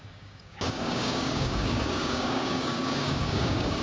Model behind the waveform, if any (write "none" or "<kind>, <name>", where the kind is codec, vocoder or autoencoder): codec, DAC